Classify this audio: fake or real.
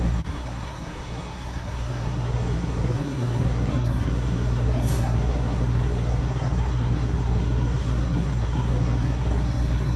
fake